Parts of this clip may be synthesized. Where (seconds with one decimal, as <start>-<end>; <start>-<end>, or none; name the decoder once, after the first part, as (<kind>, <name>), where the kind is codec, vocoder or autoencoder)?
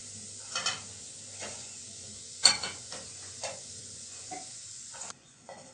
1.4-5.7 (vocoder, Vocos)